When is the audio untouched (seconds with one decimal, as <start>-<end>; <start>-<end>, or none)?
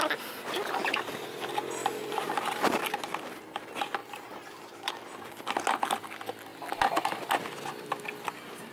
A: 0.0-1.8; 2.8-4.0; 4.9-8.7